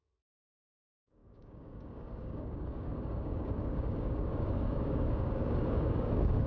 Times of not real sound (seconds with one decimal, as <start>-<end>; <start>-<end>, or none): 0.0-6.5